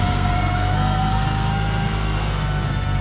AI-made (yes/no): yes